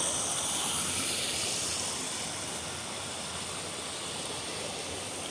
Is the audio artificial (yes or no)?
no